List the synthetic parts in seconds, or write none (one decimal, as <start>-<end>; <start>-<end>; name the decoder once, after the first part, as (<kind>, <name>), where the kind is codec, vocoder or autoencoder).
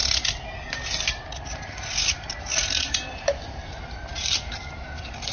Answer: none